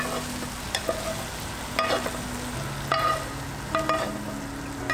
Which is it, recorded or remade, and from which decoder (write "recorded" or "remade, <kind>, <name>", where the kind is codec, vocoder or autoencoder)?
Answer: recorded